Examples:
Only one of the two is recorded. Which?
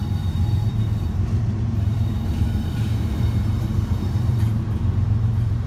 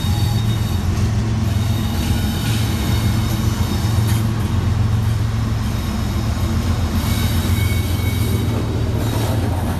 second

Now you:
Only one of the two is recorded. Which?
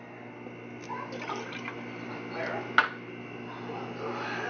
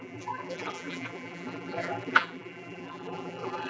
first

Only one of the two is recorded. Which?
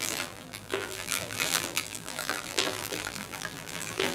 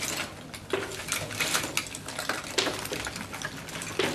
second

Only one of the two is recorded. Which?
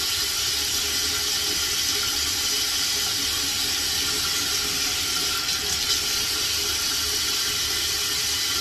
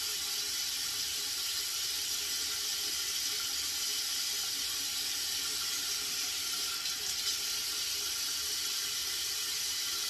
first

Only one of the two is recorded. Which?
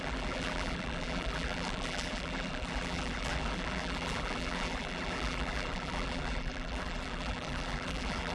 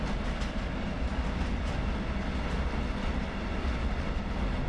second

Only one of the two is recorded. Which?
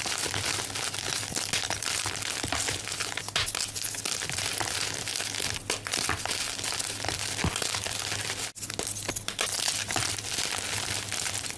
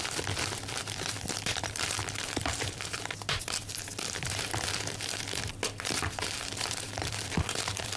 first